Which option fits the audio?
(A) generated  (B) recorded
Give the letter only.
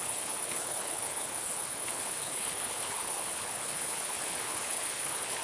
A